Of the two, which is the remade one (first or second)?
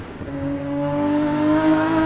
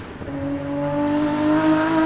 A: first